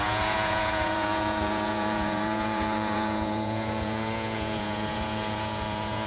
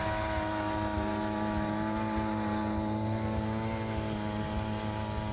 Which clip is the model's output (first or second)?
first